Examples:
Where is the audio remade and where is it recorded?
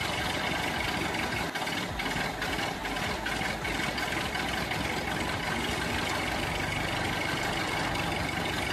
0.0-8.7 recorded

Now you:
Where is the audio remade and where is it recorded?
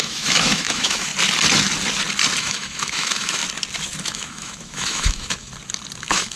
0.0-1.1 remade; 1.1-2.4 recorded; 2.4-3.4 remade; 3.4-4.0 recorded; 4.0-5.5 remade; 5.5-6.0 recorded; 6.0-6.4 remade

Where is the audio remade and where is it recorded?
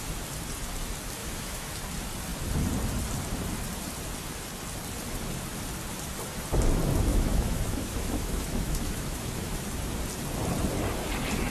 0.0-1.2 recorded; 1.2-1.7 remade; 1.7-7.1 recorded; 7.1-9.6 remade; 9.6-11.5 recorded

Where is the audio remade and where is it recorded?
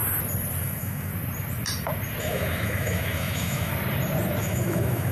0.0-0.6 recorded; 0.6-1.1 remade; 1.1-2.2 recorded; 2.2-3.7 remade; 3.7-4.4 recorded; 4.4-5.1 remade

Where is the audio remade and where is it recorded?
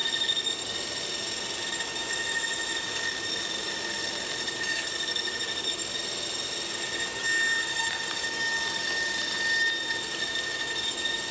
0.0-11.3 recorded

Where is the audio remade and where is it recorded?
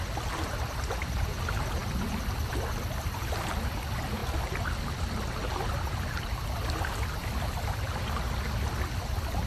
0.0-9.5 recorded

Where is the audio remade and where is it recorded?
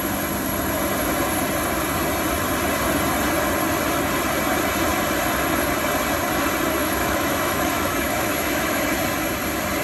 0.0-6.8 recorded; 6.8-8.9 remade; 8.9-9.8 recorded